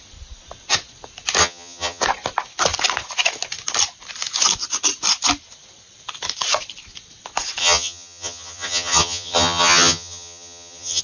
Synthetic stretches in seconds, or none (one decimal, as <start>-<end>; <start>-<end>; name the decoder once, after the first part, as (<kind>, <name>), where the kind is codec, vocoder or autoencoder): 1.4-2.0 (vocoder, HiFi-GAN); 7.6-11.0